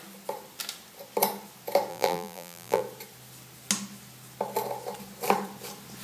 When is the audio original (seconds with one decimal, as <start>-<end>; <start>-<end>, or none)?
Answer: 0.0-1.9; 2.8-6.0